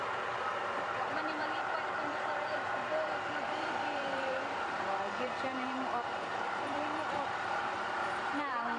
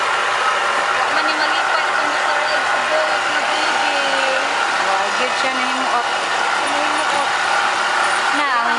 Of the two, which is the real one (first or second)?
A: second